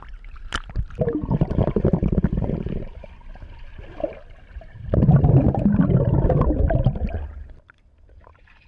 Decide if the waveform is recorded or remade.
recorded